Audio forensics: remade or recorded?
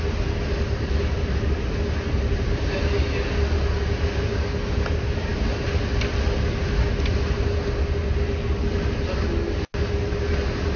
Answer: recorded